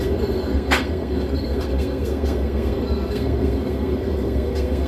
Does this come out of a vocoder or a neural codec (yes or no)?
yes